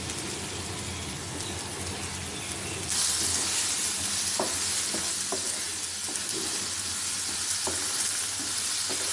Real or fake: real